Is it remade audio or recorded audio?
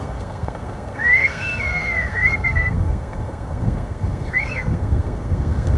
remade